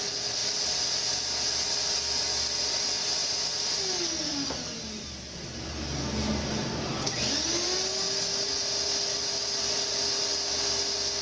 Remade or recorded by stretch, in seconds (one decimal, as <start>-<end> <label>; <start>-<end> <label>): 0.0-11.2 recorded